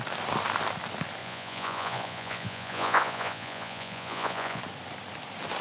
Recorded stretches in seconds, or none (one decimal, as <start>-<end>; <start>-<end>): 0.0-1.2; 4.6-5.6